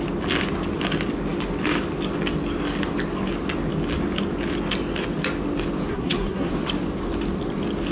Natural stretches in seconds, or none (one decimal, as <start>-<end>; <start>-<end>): 0.0-5.9; 6.5-7.9